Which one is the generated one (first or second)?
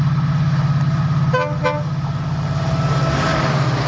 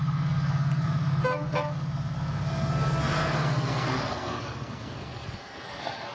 second